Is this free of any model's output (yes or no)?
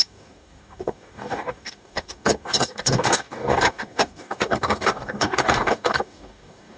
no